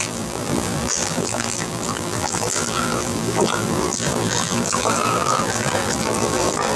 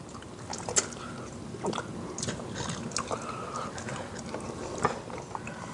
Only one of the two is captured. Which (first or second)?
second